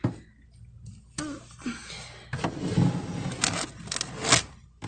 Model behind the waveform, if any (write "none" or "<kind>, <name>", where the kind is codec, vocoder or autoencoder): none